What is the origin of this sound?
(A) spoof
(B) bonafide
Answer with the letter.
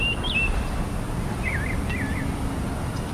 B